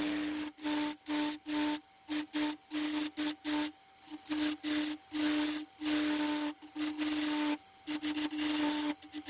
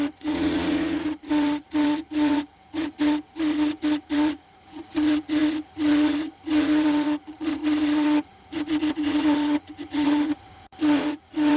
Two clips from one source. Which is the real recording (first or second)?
first